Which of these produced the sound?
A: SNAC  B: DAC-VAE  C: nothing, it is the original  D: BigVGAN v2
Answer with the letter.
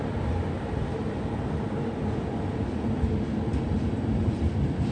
D